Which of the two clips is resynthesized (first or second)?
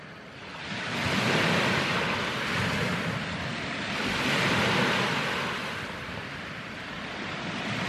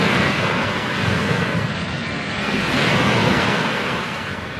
second